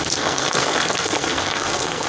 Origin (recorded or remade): remade